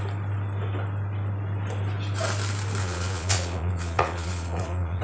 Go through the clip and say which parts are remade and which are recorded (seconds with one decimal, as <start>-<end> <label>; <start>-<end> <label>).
0.0-2.8 recorded; 2.8-5.0 remade